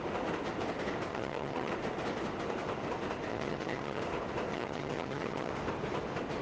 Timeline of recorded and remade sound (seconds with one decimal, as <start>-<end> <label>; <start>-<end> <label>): 0.0-1.1 recorded; 1.1-1.7 remade; 1.7-3.3 recorded; 3.3-4.0 remade; 4.0-4.5 recorded; 4.5-5.5 remade; 5.5-6.4 recorded